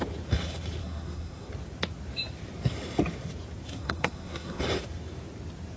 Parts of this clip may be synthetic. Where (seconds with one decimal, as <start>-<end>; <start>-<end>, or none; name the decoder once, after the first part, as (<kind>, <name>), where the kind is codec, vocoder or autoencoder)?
0.8-1.5 (codec, SNAC); 3.7-4.6